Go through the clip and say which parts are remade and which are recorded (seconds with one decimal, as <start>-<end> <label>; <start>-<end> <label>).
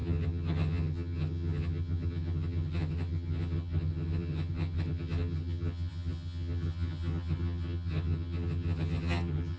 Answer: 0.0-9.6 remade